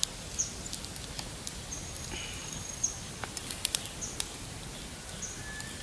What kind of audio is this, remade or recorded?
recorded